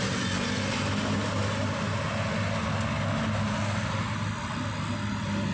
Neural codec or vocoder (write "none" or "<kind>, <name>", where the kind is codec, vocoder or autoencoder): none